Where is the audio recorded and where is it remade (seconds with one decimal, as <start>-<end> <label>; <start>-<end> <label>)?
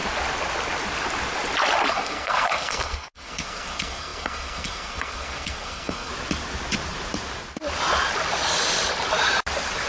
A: 0.0-1.9 recorded; 1.9-6.1 remade; 6.1-9.9 recorded